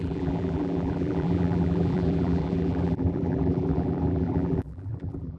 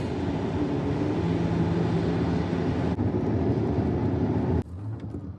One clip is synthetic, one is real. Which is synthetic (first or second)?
first